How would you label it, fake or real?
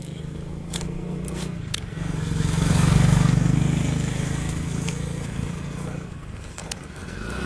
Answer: fake